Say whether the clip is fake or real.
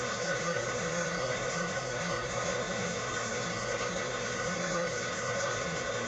fake